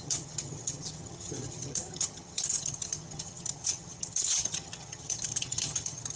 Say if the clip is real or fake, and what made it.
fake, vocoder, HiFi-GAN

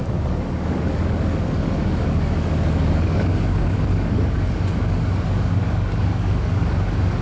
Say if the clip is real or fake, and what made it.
fake, codec, DAC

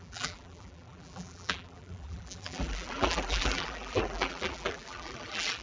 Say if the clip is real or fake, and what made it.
fake, vocoder, BigVGAN v2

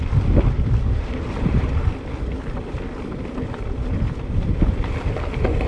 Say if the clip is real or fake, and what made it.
fake, vocoder, BigVGAN v2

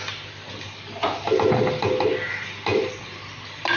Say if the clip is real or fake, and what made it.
real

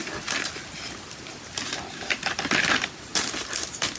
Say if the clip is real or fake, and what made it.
real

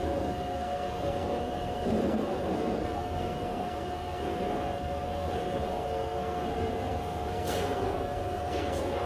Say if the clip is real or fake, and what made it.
fake, codec, SNAC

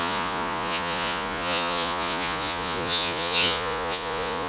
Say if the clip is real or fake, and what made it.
fake, vocoder, Vocos